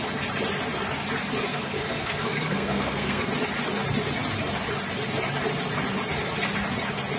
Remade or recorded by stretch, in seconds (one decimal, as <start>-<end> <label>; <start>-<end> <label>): 0.0-1.5 recorded; 1.5-3.3 remade; 3.3-7.2 recorded